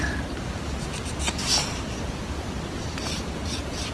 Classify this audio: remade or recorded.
recorded